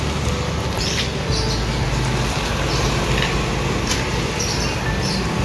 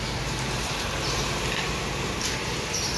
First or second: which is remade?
second